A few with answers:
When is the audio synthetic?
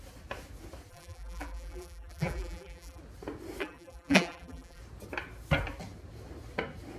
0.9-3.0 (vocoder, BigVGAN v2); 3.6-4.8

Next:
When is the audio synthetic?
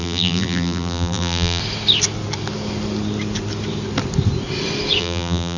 0.0-1.6 (vocoder, BigVGAN v2); 5.0-5.6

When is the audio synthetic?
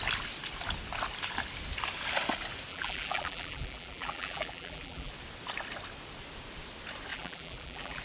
2.7-5.1 (vocoder, BigVGAN v2); 7.1-8.0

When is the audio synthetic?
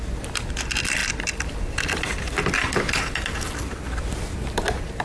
none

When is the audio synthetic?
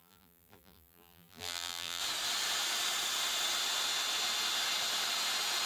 0.0-2.0 (vocoder, BigVGAN v2)